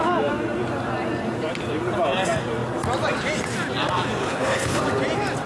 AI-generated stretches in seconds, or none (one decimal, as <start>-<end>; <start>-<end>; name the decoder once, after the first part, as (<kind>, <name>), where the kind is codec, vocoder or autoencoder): 4.2-4.8 (codec, HILCodec)